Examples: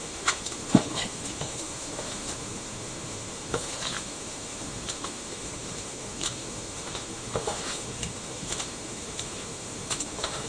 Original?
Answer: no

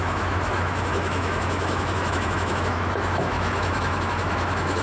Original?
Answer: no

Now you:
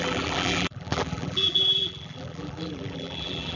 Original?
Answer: no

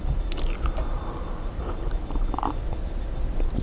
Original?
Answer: yes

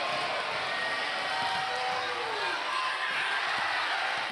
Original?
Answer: yes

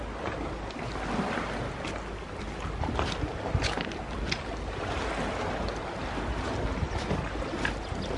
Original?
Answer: yes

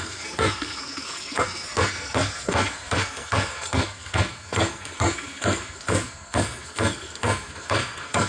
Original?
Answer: no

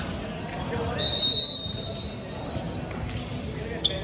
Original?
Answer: yes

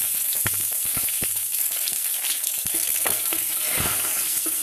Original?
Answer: no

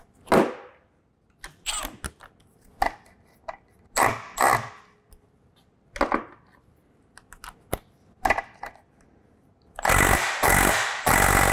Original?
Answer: yes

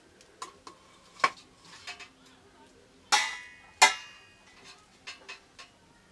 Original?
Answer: yes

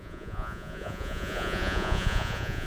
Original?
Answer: no